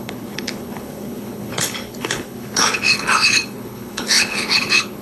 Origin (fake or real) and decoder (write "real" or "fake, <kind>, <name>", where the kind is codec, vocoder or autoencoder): fake, codec, HILCodec